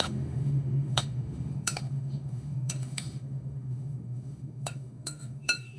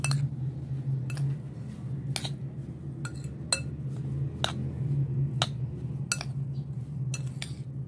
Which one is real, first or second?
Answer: second